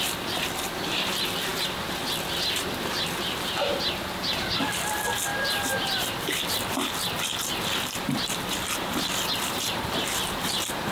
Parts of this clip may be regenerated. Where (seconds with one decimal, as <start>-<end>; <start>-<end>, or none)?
0.0-10.9